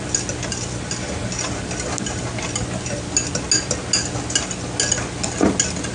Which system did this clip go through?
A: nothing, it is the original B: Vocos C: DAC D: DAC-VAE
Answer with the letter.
A